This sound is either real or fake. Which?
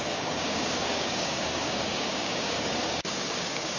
fake